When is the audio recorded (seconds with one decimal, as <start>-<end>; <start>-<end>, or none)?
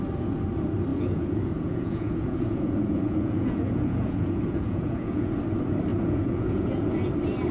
0.0-0.9; 5.3-5.9; 7.1-7.5